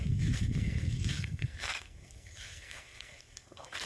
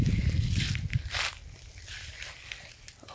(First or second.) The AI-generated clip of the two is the first